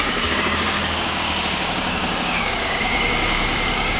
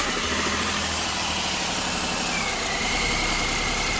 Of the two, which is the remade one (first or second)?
first